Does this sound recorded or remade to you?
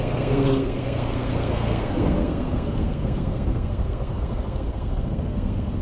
remade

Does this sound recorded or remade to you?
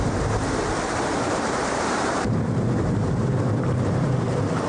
remade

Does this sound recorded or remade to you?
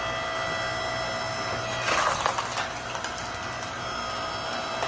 recorded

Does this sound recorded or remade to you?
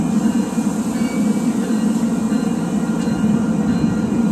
recorded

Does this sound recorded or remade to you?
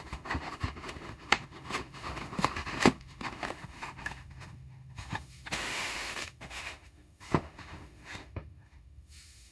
remade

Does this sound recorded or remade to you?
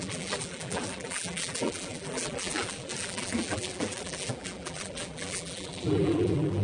remade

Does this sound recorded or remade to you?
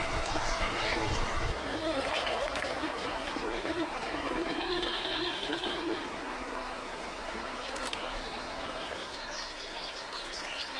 remade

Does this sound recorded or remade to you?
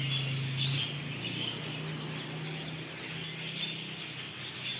recorded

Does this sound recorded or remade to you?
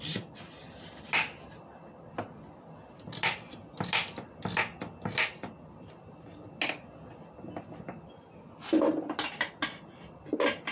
recorded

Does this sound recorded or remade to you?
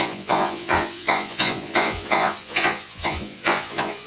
remade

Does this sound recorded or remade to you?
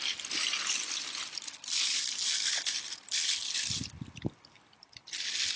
recorded